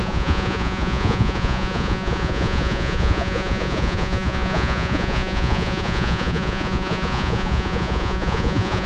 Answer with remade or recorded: remade